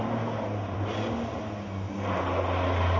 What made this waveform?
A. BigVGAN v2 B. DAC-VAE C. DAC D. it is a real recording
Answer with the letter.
D